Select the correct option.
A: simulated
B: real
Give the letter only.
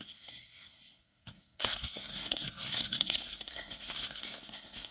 A